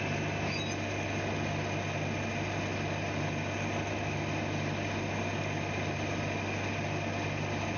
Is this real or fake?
real